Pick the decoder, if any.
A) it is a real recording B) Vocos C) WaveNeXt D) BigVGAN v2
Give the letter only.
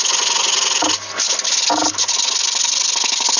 A